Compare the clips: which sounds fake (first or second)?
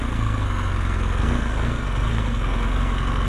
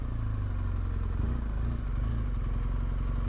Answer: first